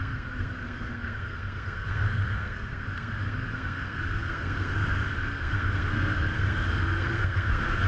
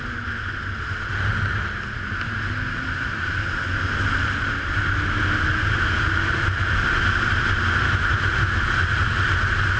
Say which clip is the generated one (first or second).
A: first